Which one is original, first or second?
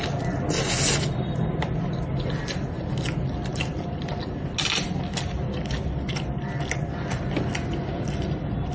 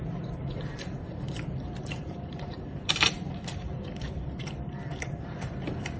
first